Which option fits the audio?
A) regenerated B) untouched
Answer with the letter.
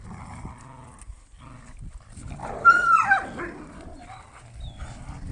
B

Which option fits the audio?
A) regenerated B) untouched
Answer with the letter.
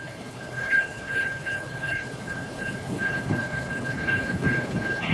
A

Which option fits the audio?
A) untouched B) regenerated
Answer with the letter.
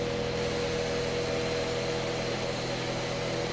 A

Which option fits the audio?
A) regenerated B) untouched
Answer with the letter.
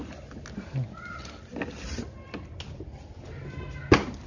B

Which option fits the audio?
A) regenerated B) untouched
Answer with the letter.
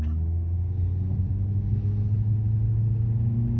B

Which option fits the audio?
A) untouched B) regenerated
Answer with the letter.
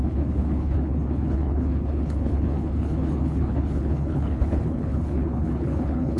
B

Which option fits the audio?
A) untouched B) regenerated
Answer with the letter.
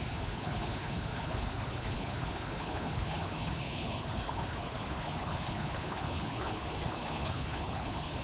B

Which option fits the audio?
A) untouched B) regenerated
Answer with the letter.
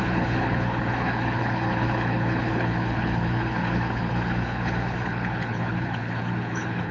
B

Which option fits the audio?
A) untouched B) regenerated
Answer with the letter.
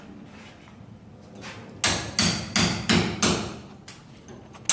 A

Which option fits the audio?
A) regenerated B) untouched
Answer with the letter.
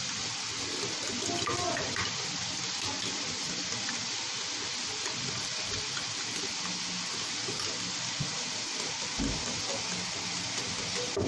B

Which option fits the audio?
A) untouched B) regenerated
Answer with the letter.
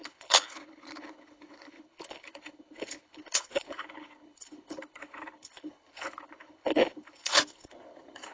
B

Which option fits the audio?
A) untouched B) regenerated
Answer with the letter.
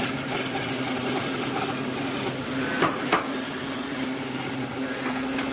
A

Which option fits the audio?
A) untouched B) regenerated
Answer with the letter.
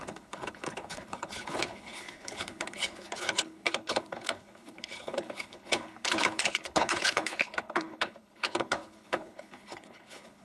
B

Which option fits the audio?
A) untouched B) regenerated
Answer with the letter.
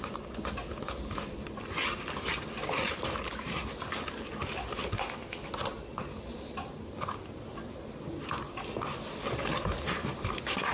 A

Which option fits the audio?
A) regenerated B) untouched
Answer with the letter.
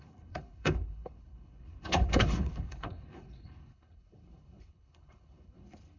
A